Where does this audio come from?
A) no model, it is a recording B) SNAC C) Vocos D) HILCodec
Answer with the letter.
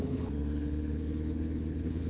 D